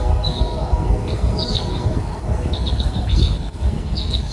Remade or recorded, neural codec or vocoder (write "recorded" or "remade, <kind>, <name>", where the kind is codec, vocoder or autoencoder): remade, codec, SNAC